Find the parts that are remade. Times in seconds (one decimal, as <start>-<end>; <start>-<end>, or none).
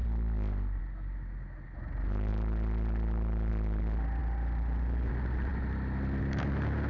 none